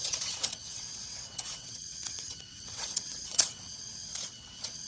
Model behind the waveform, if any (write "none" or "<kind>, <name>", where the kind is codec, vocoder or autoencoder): vocoder, WaveNeXt